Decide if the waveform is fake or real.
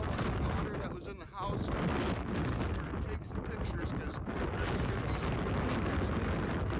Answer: real